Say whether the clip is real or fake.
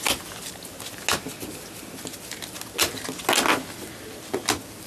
real